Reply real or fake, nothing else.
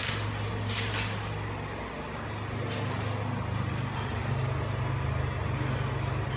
real